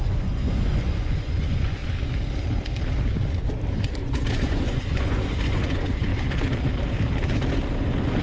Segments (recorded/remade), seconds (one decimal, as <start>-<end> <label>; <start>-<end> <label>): 0.0-1.8 remade; 1.8-4.0 recorded; 4.0-6.1 remade; 6.1-8.2 recorded